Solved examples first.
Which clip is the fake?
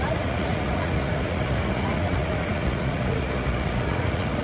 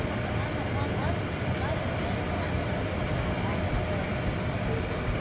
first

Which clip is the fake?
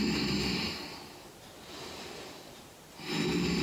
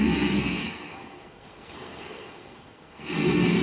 second